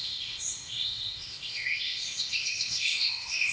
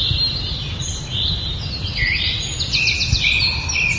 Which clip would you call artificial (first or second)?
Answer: first